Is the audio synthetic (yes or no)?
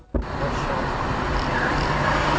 no